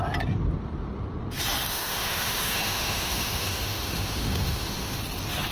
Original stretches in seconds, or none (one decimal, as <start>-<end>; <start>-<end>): 0.0-1.7; 5.0-5.5